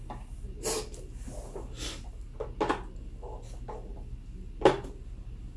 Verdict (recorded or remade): recorded